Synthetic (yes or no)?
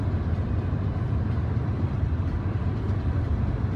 yes